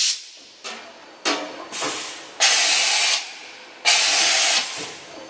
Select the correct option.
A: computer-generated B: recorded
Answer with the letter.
B